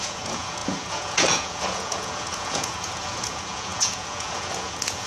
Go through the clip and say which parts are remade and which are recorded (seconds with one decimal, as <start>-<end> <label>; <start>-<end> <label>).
0.0-5.1 remade